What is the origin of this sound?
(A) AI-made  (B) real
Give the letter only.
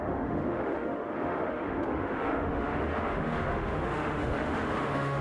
A